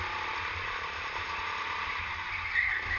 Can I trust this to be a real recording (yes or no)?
yes